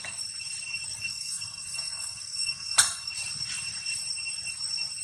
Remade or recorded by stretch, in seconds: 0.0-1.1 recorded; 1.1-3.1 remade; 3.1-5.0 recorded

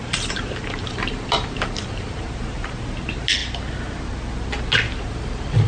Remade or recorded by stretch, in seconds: 0.0-2.8 remade; 2.8-5.7 recorded

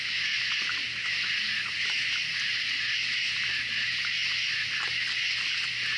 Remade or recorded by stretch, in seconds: 0.0-6.0 recorded

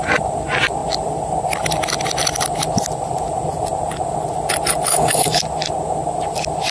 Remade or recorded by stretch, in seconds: 0.0-4.9 recorded; 4.9-5.4 remade; 5.4-6.7 recorded

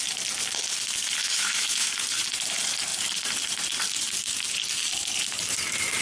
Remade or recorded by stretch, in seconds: 0.0-1.2 recorded; 1.2-1.9 remade; 1.9-6.0 recorded

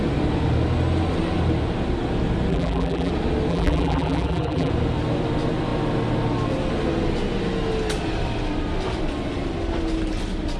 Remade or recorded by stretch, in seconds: 0.0-2.5 recorded; 2.5-3.1 remade; 3.1-3.5 recorded; 3.5-4.7 remade; 4.7-10.6 recorded